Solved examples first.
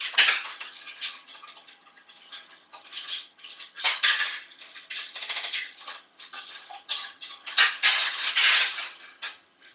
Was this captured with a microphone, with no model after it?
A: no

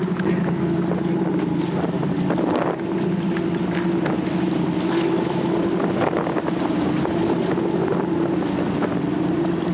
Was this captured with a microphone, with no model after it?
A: yes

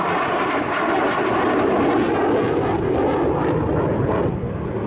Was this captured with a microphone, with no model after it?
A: yes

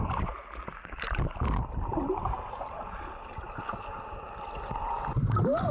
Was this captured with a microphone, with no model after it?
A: yes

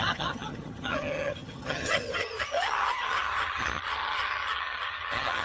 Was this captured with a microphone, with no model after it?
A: no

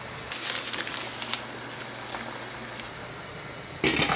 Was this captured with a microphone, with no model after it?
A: yes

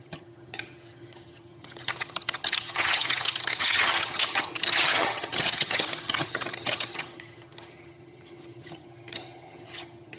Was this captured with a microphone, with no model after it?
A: no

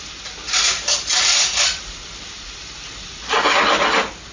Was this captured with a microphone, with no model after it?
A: yes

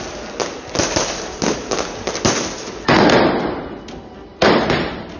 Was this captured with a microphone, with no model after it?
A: yes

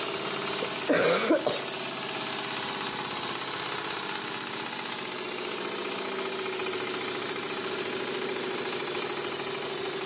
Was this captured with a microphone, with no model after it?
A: yes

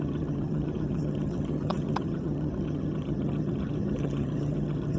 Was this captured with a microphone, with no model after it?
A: no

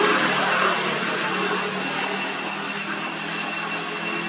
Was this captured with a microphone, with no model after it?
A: yes